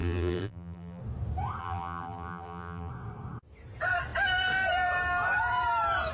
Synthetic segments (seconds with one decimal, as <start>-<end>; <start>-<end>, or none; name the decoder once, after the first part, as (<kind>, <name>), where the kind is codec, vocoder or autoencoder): 0.0-1.0 (vocoder, BigVGAN v2); 1.6-2.9